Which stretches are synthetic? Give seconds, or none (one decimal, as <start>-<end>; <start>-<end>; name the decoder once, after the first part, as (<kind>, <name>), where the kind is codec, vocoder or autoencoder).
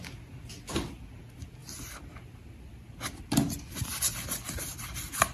1.6-4.8 (vocoder, BigVGAN v2)